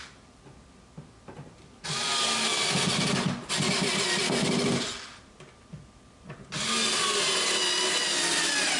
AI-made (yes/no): no